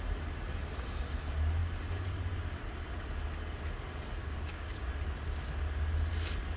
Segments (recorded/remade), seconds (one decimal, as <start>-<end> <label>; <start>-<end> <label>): 0.0-4.2 recorded; 4.2-4.9 remade; 4.9-6.6 recorded